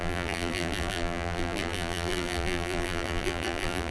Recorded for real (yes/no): no